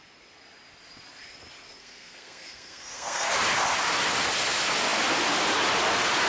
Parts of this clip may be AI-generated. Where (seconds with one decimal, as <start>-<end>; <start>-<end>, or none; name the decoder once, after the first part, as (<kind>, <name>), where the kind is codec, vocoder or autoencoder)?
1.8-3.3 (codec, SNAC)